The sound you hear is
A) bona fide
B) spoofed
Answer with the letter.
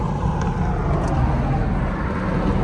A